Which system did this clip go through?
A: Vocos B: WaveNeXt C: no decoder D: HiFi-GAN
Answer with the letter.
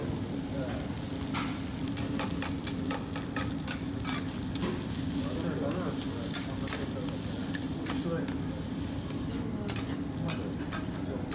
C